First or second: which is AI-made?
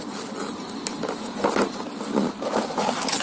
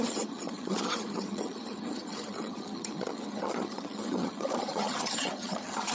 second